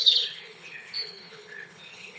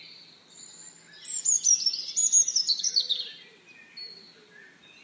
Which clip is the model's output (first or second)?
first